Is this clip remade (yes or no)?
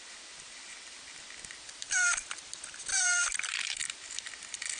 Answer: no